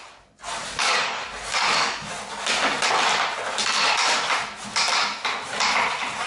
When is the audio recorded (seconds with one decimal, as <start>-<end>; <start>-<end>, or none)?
0.0-0.6; 2.1-6.3